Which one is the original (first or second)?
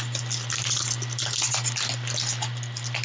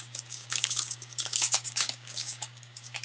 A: first